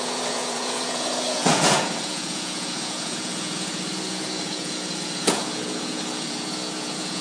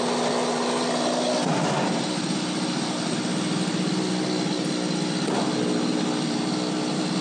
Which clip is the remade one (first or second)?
first